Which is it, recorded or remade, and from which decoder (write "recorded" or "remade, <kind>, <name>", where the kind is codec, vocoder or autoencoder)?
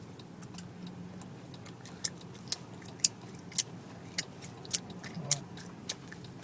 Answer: recorded